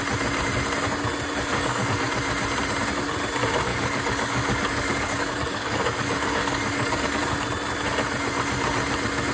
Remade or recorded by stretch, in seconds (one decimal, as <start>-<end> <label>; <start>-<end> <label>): 0.0-1.5 recorded; 1.5-2.1 remade; 2.1-3.7 recorded; 3.7-7.2 remade; 7.2-9.3 recorded